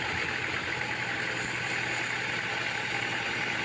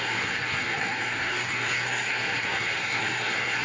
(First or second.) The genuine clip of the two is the first